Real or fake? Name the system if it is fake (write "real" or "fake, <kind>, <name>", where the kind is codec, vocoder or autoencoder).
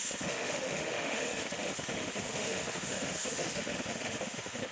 fake, autoencoder, DAC-VAE